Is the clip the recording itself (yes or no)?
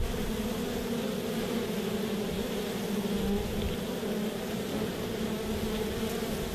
yes